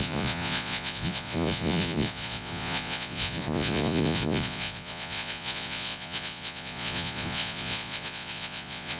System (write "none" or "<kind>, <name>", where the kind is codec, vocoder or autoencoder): vocoder, Vocos